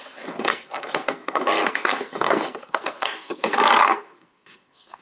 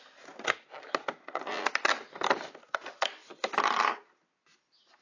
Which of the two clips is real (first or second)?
second